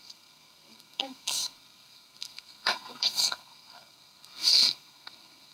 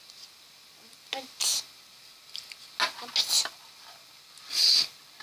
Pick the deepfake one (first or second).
first